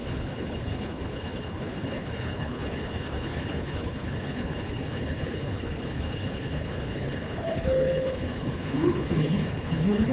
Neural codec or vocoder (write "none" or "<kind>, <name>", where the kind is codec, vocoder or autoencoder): codec, HILCodec